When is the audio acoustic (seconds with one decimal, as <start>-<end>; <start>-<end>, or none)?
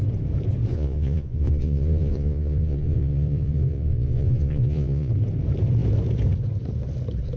0.0-0.7; 5.1-7.4